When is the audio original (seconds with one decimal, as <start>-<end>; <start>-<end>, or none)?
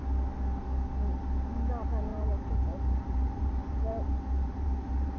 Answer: 0.0-2.1